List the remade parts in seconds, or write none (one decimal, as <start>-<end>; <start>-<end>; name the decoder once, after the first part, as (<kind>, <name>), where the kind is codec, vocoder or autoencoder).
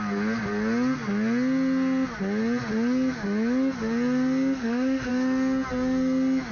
4.6-5.1 (autoencoder, DAC-VAE)